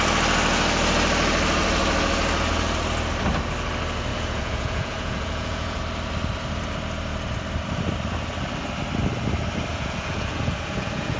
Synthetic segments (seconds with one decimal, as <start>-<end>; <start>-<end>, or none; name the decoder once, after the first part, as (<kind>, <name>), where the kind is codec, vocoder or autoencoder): 4.1-5.8 (vocoder, Vocos); 9.7-11.2